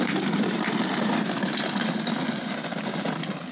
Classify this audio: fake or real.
real